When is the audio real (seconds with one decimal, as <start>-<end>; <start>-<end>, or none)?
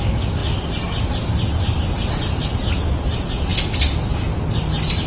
0.0-5.1